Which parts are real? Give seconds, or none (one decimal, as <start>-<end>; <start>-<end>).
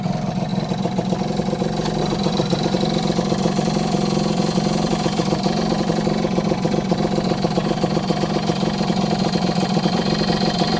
0.5-2.0